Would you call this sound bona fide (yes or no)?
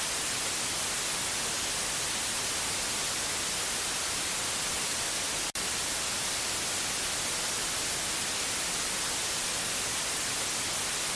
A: yes